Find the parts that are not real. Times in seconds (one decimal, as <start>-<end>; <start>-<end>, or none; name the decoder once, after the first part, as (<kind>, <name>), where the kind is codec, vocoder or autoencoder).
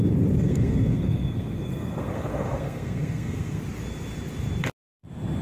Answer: 0.4-3.6 (codec, SNAC)